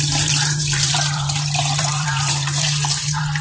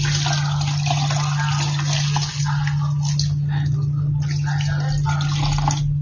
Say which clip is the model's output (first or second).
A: first